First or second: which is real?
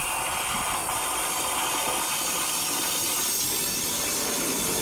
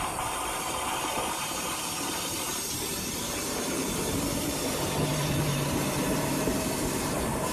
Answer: first